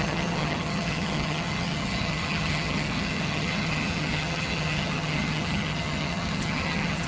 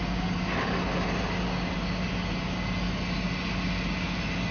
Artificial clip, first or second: first